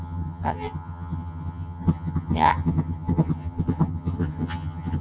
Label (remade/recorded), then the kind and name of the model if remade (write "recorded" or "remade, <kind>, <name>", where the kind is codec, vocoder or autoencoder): remade, vocoder, HiFi-GAN